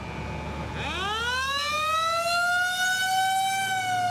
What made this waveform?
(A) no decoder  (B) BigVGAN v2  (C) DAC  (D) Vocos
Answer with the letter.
A